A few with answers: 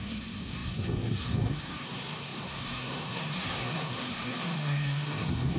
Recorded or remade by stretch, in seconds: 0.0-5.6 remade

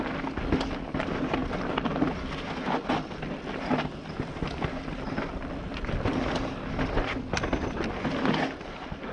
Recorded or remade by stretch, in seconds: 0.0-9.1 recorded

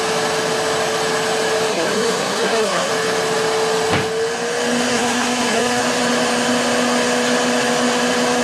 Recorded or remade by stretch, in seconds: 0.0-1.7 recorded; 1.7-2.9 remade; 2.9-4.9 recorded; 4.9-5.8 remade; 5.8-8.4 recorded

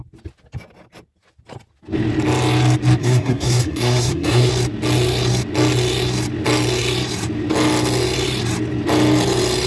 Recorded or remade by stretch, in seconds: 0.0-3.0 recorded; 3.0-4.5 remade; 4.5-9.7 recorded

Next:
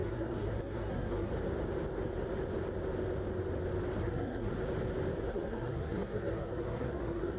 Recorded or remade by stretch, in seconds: 0.0-1.3 remade; 1.3-4.0 recorded; 4.0-4.5 remade; 4.5-5.3 recorded; 5.3-7.4 remade

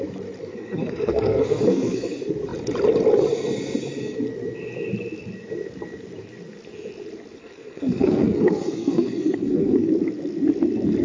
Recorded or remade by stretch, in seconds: 0.0-0.4 recorded; 0.4-2.1 remade; 2.1-7.4 recorded; 7.4-9.9 remade; 9.9-11.0 recorded

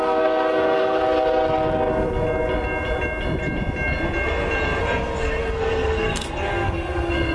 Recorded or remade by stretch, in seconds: 0.0-1.0 remade; 1.0-4.8 recorded; 4.8-7.3 remade

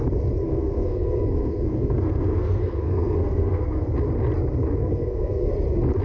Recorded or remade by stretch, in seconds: 0.0-0.4 recorded; 0.4-3.8 remade; 3.8-4.8 recorded; 4.8-5.5 remade; 5.5-6.0 recorded